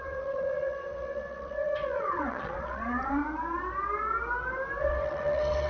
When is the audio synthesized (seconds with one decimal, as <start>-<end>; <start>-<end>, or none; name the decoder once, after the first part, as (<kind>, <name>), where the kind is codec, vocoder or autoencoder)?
0.0-3.2 (vocoder, WaveNeXt); 4.8-5.7